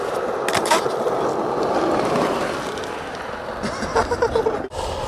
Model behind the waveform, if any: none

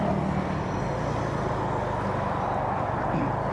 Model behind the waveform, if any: none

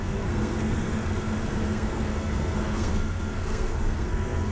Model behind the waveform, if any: codec, SNAC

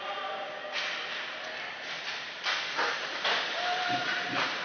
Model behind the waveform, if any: none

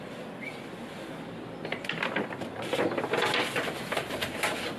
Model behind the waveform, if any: none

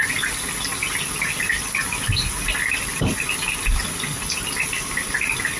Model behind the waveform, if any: none